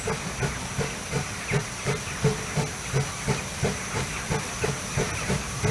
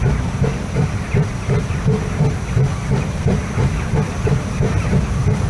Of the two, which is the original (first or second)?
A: first